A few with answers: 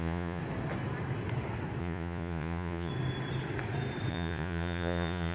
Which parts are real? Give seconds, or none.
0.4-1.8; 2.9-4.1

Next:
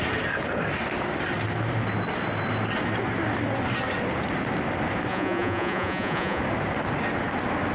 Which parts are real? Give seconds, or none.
0.0-5.1; 6.4-7.7

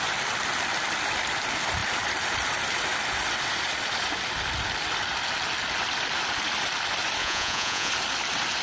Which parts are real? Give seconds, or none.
0.0-7.2; 7.9-8.6

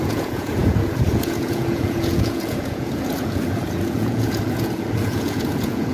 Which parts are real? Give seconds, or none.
none

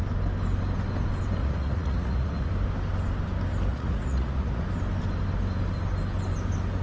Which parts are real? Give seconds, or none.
0.0-1.4; 2.5-3.7; 4.6-6.8

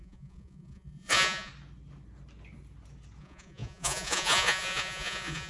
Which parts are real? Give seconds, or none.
1.5-3.2

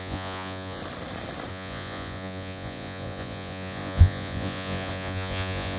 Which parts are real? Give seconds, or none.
0.8-1.5

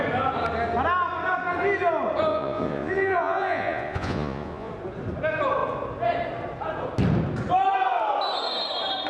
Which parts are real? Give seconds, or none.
0.0-2.3; 4.7-9.1